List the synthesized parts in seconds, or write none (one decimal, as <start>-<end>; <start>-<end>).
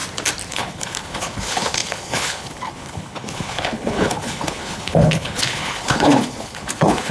0.5-7.1